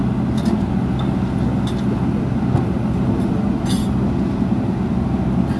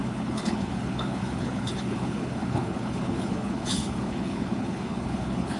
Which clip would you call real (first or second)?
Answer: first